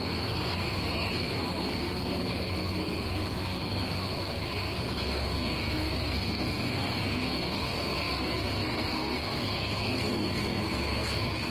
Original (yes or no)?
no